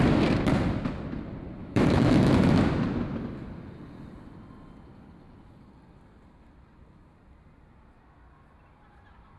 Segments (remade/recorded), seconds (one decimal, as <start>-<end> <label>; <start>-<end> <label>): 0.0-1.6 recorded; 1.6-2.3 remade; 2.3-9.4 recorded

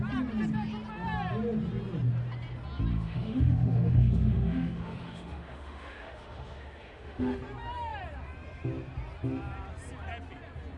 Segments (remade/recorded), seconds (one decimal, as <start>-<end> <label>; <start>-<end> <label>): 0.0-2.9 recorded; 2.9-7.4 remade; 7.4-10.8 recorded

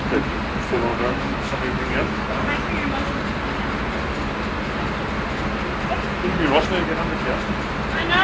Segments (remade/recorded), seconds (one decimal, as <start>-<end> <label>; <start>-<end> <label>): 0.0-0.9 recorded; 0.9-2.2 remade; 2.2-8.2 recorded

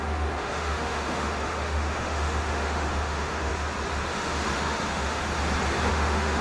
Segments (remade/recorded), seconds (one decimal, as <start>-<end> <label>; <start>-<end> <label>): 0.0-3.5 remade; 3.5-4.1 recorded; 4.1-5.2 remade; 5.2-5.9 recorded; 5.9-6.4 remade

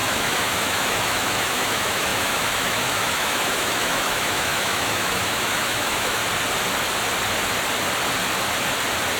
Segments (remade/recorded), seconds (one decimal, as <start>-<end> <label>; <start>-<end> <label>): 0.0-6.2 remade; 6.2-9.2 recorded

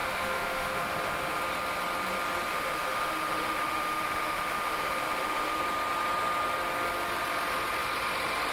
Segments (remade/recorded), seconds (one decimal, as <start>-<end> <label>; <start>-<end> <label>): 0.0-1.4 remade; 1.4-2.5 recorded; 2.5-5.6 remade; 5.6-8.5 recorded